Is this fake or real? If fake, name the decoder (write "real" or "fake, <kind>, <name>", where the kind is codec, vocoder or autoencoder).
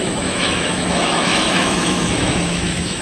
fake, autoencoder, DAC-VAE